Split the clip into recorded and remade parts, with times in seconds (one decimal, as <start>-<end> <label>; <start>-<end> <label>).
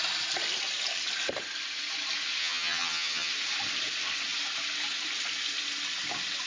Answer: 0.0-2.4 recorded; 2.4-3.3 remade; 3.3-6.5 recorded